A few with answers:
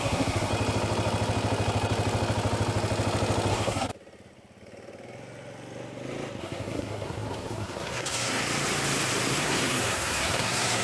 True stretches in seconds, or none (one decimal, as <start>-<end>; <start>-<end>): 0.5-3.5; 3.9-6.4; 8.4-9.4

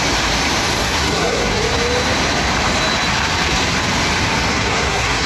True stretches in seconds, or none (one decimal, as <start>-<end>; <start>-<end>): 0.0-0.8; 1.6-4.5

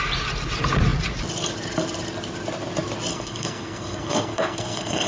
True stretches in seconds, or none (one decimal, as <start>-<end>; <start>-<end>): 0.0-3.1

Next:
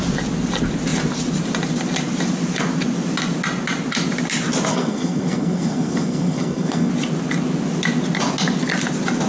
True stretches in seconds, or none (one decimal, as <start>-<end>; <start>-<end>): 0.0-4.7; 6.9-9.3